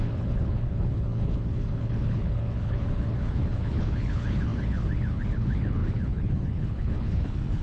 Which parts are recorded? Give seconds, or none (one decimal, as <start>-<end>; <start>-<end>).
none

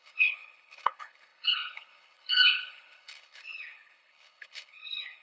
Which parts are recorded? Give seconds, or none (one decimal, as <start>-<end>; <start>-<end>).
none

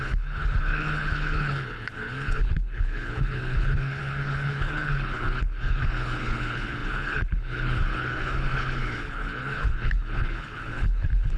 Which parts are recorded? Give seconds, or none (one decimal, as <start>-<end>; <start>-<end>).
none

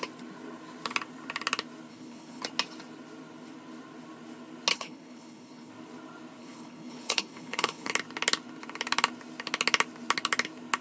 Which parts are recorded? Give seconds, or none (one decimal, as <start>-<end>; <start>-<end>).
0.0-1.9; 2.4-4.7; 5.7-6.4; 7.9-10.8